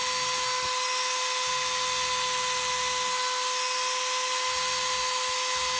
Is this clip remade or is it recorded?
recorded